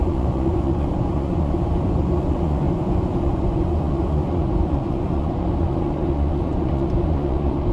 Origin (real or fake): fake